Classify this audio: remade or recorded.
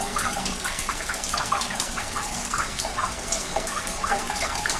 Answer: remade